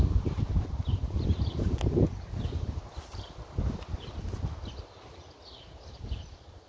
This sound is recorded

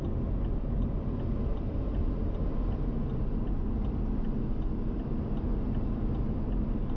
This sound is recorded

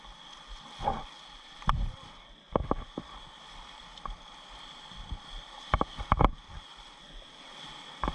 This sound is recorded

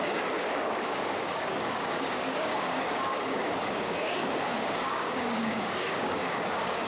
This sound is remade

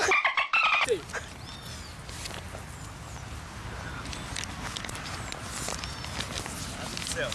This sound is recorded